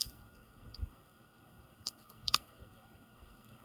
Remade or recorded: remade